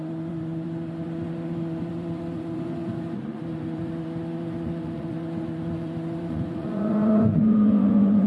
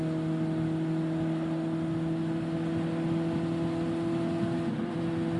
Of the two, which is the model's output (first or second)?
first